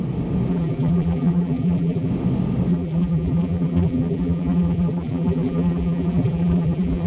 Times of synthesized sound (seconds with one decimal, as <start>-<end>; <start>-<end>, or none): 0.5-2.1; 2.7-7.1